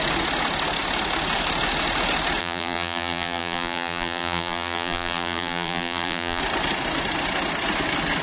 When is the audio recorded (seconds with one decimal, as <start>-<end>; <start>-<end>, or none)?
0.0-2.4; 6.4-8.2

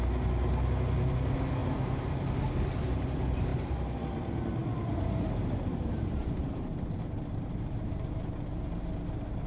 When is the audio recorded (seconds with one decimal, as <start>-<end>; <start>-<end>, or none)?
0.0-1.6; 2.4-3.5; 4.0-4.6; 8.6-9.5

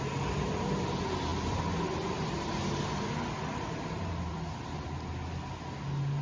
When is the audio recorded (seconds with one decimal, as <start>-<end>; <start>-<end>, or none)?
0.0-6.2

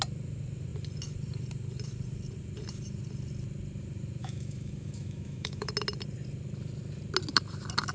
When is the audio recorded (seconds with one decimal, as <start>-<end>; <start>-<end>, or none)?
0.0-4.2; 5.7-7.9

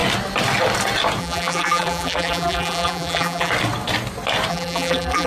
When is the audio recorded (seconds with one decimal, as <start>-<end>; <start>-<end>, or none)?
0.0-1.2; 3.5-4.5